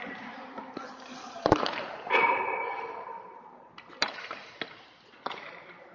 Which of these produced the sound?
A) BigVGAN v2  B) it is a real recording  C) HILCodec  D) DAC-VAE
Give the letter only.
A